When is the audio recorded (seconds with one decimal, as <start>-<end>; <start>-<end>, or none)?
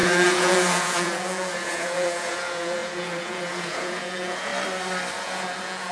4.5-5.2